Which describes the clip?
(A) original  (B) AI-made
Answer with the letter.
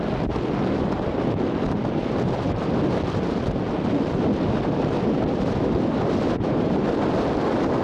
A